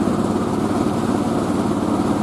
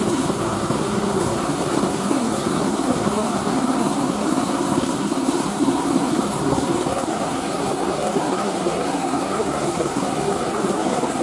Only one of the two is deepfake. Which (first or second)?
second